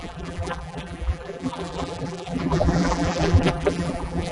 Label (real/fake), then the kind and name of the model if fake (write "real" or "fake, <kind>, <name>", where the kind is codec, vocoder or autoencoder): fake, vocoder, BigVGAN v2